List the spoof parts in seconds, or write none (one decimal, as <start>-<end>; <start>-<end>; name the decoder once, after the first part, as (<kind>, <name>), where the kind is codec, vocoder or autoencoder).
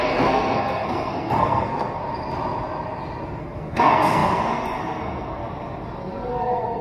0.0-2.0 (codec, SNAC); 3.4-5.4; 6.3-6.8